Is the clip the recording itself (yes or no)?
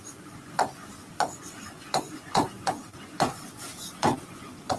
no